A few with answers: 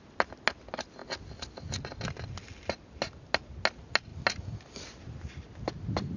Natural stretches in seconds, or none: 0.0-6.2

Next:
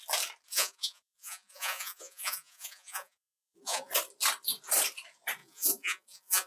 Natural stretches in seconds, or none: 0.0-0.5; 3.9-5.4

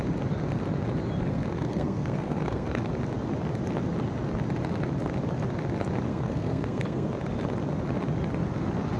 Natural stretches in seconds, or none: 0.0-1.3; 2.9-6.1; 7.1-9.0